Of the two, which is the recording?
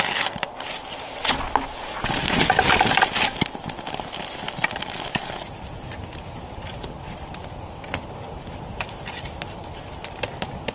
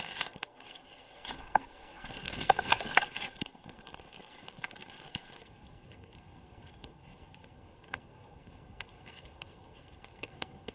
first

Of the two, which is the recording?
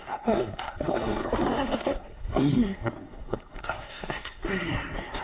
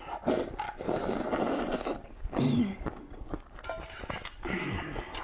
second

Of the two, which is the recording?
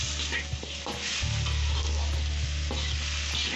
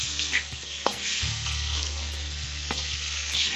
first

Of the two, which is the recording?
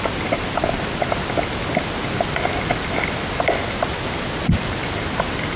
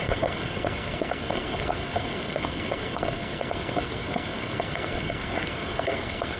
first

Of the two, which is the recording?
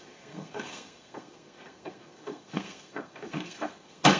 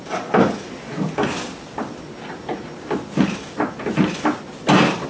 second